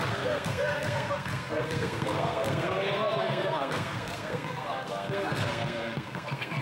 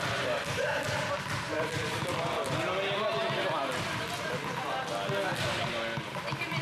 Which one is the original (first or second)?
second